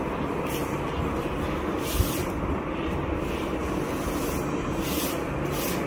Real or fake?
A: real